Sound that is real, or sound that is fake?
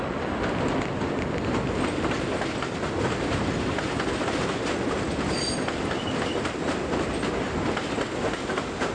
real